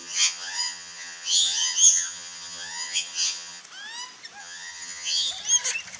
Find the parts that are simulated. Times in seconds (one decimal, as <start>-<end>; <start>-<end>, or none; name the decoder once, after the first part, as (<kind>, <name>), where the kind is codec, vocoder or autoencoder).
0.0-3.6 (vocoder, HiFi-GAN); 4.4-5.3